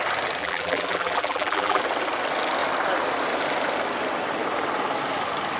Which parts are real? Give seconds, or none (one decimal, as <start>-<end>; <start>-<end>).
0.0-0.4; 1.8-5.6